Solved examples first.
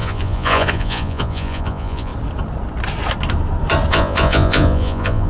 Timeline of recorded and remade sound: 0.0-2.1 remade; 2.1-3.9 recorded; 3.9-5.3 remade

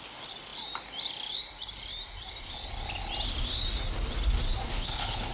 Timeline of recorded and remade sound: 0.0-4.7 recorded; 4.7-5.3 remade

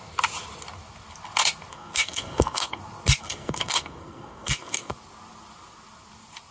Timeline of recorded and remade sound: 0.0-1.7 recorded; 1.7-2.8 remade; 2.8-3.2 recorded; 3.2-4.9 remade; 4.9-6.5 recorded

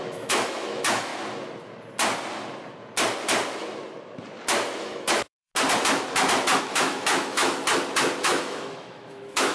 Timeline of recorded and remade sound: 0.0-1.1 remade; 1.1-4.8 recorded; 4.8-5.5 remade; 5.5-6.6 recorded; 6.6-7.6 remade; 7.6-8.2 recorded; 8.2-9.5 remade

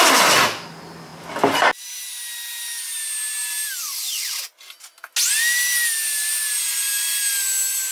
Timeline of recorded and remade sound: 0.0-7.9 recorded

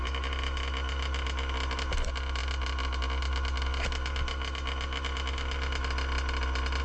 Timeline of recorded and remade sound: 0.0-6.8 recorded